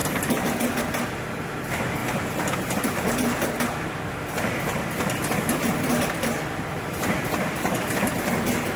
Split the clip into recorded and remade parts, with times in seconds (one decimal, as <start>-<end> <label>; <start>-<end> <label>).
0.0-5.9 recorded; 5.9-8.3 remade; 8.3-8.8 recorded